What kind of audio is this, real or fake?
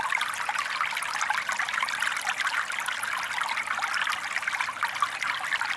real